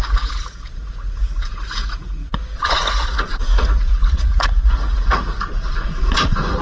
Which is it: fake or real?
fake